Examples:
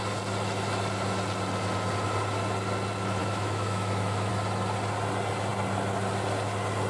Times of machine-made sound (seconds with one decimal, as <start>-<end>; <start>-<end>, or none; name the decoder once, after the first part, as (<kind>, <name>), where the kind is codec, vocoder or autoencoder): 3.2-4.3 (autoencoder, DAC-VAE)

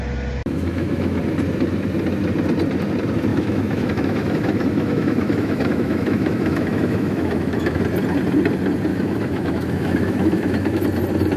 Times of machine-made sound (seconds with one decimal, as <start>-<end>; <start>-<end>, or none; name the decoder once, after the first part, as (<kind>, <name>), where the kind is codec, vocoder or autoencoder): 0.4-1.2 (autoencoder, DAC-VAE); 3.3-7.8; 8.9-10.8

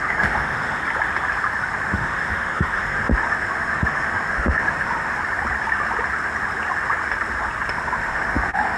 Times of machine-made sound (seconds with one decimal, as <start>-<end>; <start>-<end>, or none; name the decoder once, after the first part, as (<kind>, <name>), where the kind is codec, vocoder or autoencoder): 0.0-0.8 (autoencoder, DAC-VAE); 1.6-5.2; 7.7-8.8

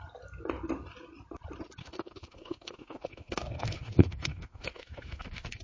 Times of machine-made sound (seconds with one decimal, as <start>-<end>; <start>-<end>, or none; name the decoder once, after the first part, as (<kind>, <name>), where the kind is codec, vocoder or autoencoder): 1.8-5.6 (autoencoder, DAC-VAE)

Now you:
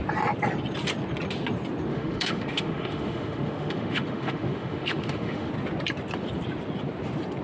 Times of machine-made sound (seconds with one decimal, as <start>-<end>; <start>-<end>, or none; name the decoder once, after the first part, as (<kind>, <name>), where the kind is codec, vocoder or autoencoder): 1.9-5.5 (autoencoder, DAC-VAE)